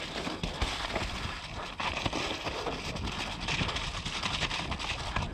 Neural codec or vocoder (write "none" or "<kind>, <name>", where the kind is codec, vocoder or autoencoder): none